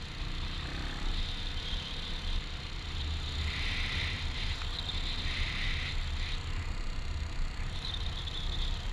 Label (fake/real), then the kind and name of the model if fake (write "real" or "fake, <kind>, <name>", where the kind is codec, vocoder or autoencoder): real